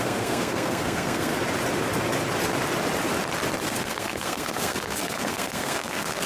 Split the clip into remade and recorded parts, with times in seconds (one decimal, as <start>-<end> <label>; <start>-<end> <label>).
0.0-1.3 remade; 1.3-3.6 recorded; 3.6-6.3 remade